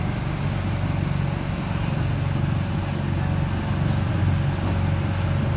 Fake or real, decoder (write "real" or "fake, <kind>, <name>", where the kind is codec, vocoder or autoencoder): real